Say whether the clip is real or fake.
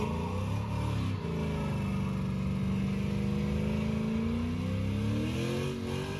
real